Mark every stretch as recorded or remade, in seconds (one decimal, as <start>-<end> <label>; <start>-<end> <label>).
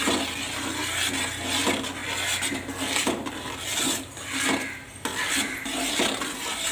0.0-6.7 recorded